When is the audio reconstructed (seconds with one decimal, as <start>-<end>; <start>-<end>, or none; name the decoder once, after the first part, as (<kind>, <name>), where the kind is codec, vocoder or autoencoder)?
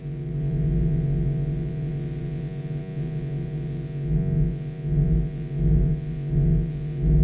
0.0-7.2 (vocoder, Vocos)